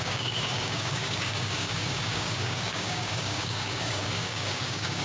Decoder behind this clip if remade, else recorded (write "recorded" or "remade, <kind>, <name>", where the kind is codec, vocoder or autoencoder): remade, codec, DAC